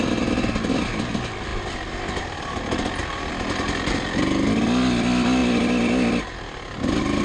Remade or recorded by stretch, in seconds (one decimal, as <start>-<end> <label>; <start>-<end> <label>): 0.0-7.2 recorded